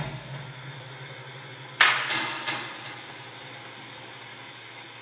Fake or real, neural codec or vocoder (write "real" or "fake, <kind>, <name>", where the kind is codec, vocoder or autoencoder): real